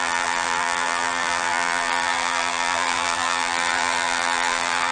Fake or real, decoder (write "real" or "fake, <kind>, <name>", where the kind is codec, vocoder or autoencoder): fake, vocoder, BigVGAN v2